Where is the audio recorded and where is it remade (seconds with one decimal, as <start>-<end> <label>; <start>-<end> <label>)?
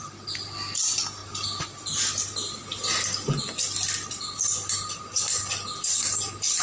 0.0-6.6 recorded